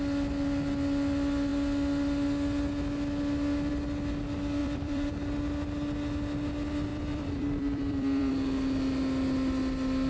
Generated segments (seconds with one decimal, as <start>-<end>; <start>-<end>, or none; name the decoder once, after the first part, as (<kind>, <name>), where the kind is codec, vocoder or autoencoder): 4.6-5.1 (vocoder, BigVGAN v2); 6.9-8.3